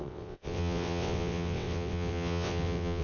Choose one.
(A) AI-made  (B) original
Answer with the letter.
A